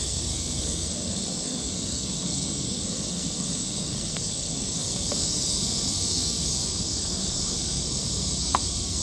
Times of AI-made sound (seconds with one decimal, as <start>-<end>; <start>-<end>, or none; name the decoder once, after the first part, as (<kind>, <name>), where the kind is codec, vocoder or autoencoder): 0.0-9.0 (codec, SNAC)